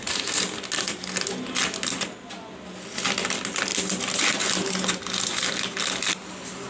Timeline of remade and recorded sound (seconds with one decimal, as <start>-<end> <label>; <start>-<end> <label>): 0.0-3.7 recorded; 3.7-4.4 remade; 4.4-6.7 recorded